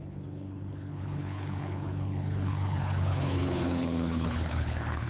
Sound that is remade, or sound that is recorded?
remade